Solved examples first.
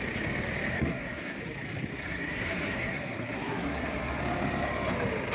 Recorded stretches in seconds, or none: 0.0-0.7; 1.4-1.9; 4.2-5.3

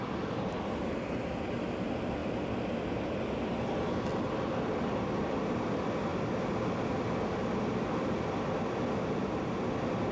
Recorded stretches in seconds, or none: 0.0-10.1

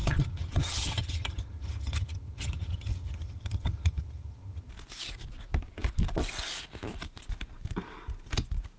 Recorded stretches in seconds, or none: 4.7-8.8

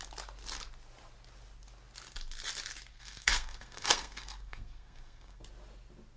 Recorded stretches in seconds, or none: 0.0-2.9; 5.4-6.2

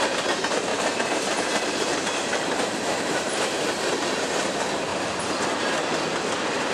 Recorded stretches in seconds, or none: 0.0-0.7; 3.9-4.9; 5.4-6.7

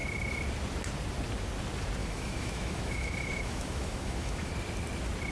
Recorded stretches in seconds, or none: 0.0-2.0; 4.5-5.3